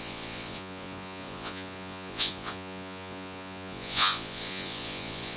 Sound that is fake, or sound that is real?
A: fake